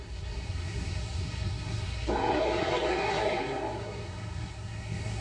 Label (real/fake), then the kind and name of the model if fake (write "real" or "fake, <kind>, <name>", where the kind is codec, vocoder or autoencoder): fake, codec, SNAC